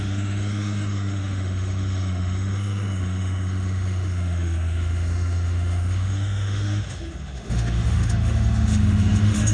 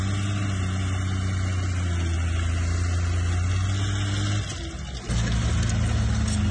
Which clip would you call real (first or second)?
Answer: second